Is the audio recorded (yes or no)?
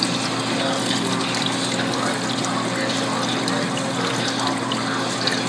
yes